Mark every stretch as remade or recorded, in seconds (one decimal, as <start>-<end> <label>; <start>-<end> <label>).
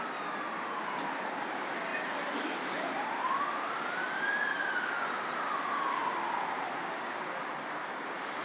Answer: 0.0-8.4 recorded